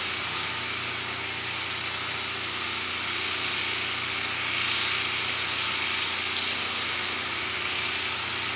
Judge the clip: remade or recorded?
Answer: recorded